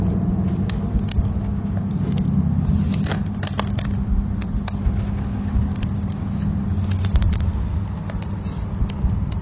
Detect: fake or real real